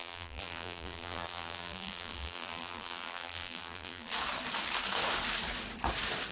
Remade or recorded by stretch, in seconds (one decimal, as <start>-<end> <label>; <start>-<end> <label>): 0.0-4.1 remade; 4.1-6.3 recorded